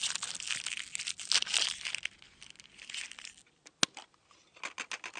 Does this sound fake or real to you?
real